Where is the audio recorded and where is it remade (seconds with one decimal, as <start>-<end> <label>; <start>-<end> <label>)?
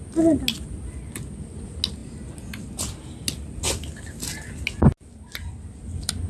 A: 0.0-6.3 recorded